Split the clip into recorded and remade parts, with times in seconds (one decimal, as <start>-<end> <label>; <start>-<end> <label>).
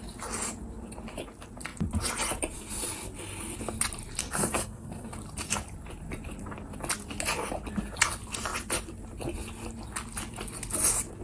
0.0-4.2 recorded; 4.2-5.1 remade; 5.1-11.2 recorded